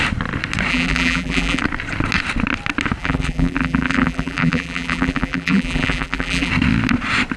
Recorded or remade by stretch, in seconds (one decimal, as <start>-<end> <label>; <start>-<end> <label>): 0.0-0.7 recorded; 0.7-1.6 remade; 1.6-3.0 recorded; 3.0-6.5 remade; 6.5-7.4 recorded